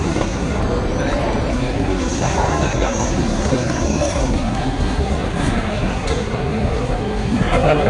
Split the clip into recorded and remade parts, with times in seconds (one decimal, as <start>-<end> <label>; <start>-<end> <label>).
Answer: 0.0-0.6 remade; 0.6-1.5 recorded; 1.5-7.9 remade